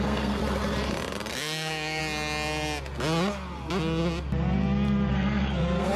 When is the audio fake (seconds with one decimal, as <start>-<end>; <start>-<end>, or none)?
0.0-0.4; 1.3-2.0; 5.1-6.0

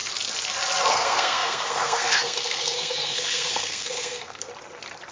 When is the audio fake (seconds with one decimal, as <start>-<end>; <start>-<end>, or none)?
0.9-4.5

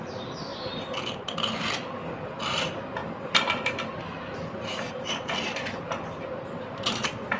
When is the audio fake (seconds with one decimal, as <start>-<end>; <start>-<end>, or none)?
3.0-4.9

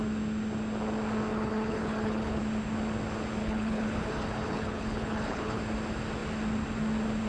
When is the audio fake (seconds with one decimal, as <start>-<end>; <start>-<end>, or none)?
1.3-2.4; 3.4-5.6

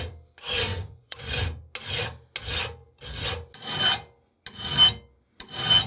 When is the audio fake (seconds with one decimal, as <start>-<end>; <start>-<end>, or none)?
0.7-1.4